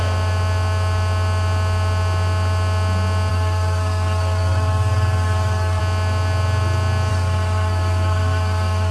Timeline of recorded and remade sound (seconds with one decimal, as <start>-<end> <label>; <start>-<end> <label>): 0.0-3.3 recorded; 3.3-5.8 remade; 5.8-7.1 recorded; 7.1-8.9 remade

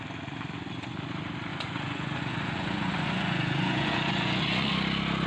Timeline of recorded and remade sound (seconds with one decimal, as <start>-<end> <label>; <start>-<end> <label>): 0.0-1.5 recorded; 1.5-4.7 remade; 4.7-5.3 recorded

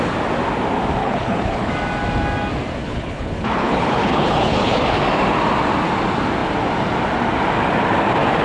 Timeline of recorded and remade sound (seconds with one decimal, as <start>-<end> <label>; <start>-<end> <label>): 0.0-1.0 recorded; 1.0-1.7 remade; 1.7-2.8 recorded; 2.8-5.0 remade; 5.0-8.4 recorded